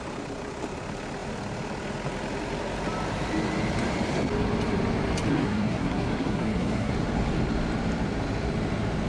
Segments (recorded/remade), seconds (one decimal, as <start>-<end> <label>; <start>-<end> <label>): 0.0-5.3 recorded; 5.3-6.9 remade; 6.9-9.1 recorded